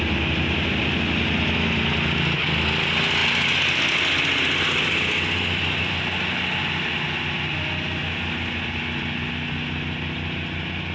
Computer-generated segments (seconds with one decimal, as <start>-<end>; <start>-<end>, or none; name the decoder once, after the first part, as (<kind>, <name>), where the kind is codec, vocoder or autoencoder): none